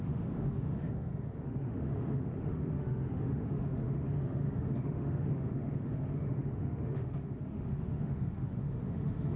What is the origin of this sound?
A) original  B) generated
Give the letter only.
B